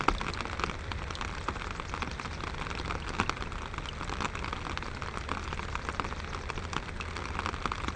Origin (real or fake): real